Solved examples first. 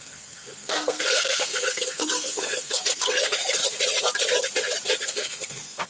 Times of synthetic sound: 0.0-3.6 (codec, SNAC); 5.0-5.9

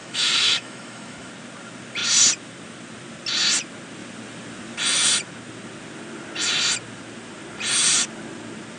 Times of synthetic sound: 0.0-1.3 (autoencoder, DAC-VAE)

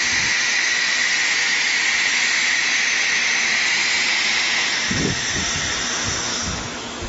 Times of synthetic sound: 6.3-7.1 (autoencoder, DAC-VAE)

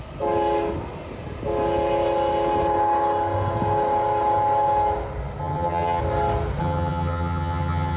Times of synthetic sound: 5.4-6.0 (vocoder, HiFi-GAN); 6.6-8.0

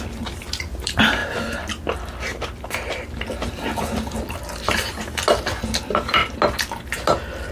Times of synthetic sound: none

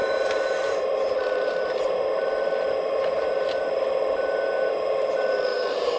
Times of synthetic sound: 0.0-3.6 (vocoder, BigVGAN v2); 5.5-6.0

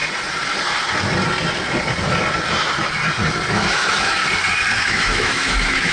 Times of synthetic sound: 3.5-4.2 (autoencoder, DAC-VAE); 4.8-5.9